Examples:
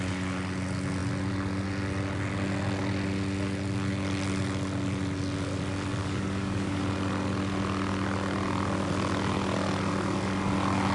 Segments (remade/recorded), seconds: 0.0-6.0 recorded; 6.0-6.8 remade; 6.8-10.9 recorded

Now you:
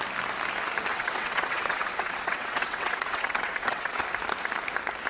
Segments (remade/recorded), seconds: 0.0-0.9 recorded; 0.9-4.0 remade; 4.0-5.1 recorded

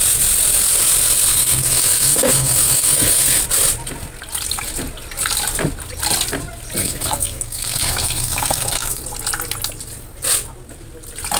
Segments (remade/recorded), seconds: 0.0-1.3 recorded; 1.3-3.4 remade; 3.4-6.8 recorded; 6.8-9.0 remade; 9.0-11.4 recorded

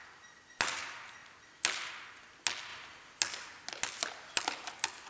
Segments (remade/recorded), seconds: 0.0-5.1 recorded

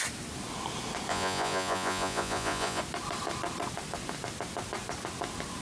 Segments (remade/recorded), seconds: 0.0-1.1 recorded; 1.1-2.8 remade; 2.8-5.6 recorded